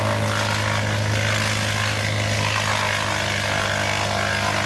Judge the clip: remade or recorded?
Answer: recorded